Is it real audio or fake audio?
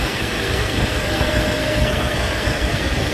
fake